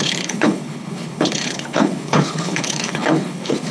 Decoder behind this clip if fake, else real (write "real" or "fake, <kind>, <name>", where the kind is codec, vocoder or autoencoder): fake, codec, HILCodec